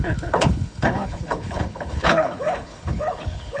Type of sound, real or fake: fake